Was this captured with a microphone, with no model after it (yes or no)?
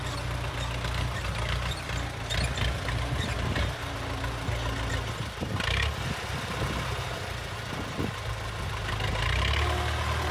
yes